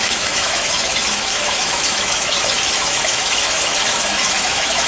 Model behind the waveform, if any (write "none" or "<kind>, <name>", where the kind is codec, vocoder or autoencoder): autoencoder, DAC-VAE